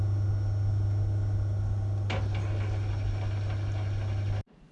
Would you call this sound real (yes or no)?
yes